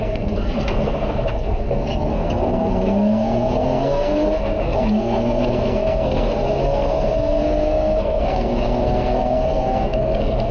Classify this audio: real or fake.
fake